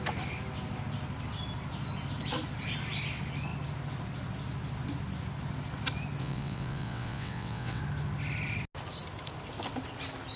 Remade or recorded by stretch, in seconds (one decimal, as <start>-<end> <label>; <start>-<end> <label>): 0.0-6.2 recorded; 6.2-7.8 remade; 7.8-10.4 recorded